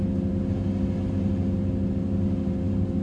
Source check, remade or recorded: recorded